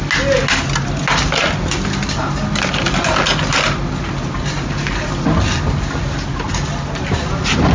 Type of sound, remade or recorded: recorded